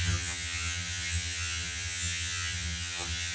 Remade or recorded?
remade